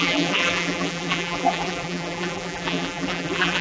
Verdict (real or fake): fake